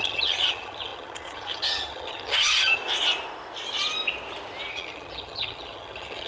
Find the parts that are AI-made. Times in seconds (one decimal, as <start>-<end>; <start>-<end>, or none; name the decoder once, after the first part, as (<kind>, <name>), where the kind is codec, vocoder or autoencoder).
0.0-2.8 (vocoder, HiFi-GAN); 4.7-6.3